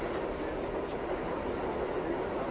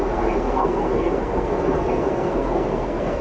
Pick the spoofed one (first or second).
second